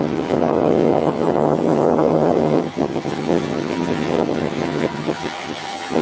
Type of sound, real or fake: fake